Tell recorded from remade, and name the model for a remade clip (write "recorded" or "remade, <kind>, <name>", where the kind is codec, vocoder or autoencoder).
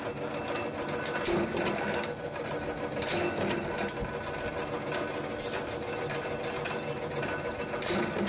recorded